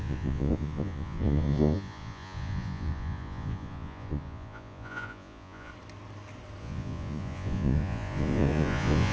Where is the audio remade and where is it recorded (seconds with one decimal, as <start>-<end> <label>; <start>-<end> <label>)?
0.0-5.7 remade; 5.7-6.6 recorded; 6.6-9.1 remade